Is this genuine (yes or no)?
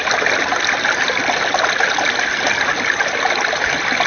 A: yes